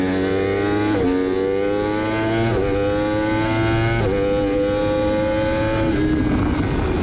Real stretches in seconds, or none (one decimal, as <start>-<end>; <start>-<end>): 0.0-7.0